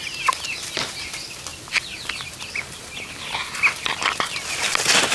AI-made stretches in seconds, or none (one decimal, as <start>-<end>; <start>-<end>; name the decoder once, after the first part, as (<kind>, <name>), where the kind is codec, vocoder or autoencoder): 1.5-3.1 (vocoder, BigVGAN v2)

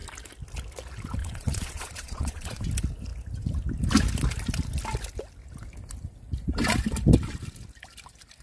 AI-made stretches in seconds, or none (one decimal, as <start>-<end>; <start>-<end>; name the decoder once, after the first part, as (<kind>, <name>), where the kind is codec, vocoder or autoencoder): 1.2-2.6 (vocoder, Vocos)